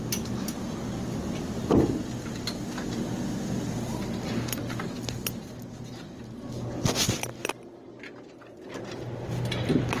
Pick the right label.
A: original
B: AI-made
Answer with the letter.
A